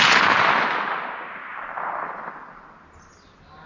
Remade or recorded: recorded